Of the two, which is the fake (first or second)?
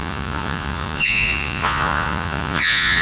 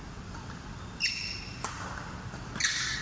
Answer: first